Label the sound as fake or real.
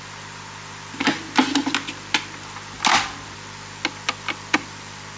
real